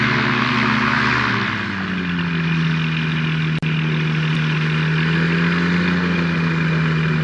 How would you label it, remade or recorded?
recorded